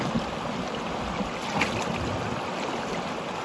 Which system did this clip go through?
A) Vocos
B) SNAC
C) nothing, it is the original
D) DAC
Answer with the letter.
C